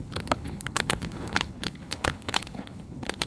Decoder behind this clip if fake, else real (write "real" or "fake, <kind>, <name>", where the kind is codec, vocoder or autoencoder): fake, codec, HILCodec